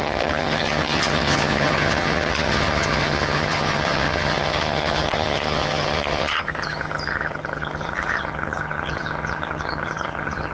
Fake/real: fake